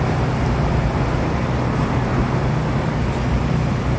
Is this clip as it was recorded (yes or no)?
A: yes